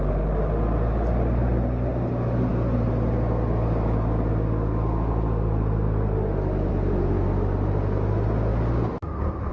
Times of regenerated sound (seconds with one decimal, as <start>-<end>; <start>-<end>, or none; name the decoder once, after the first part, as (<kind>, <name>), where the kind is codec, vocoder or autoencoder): none